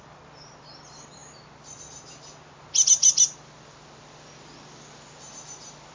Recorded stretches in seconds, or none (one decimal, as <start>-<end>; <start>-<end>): 0.0-5.9